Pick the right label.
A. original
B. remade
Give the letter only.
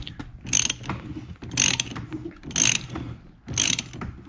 A